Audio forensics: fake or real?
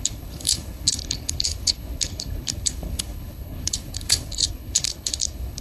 fake